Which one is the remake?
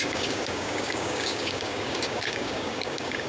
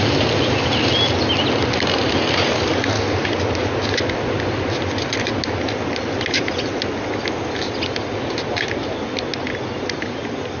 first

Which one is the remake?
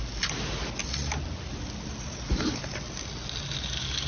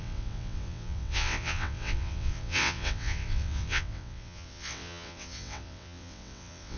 second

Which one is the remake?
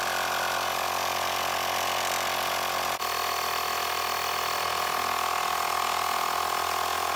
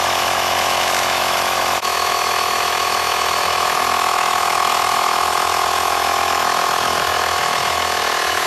second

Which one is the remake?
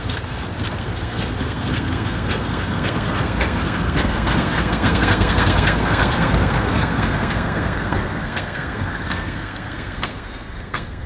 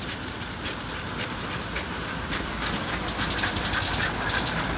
first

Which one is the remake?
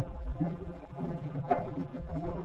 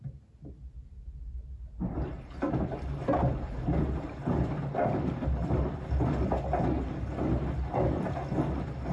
first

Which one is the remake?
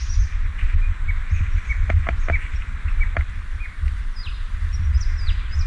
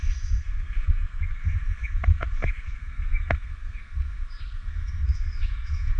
second